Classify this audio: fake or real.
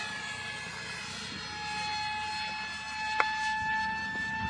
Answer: real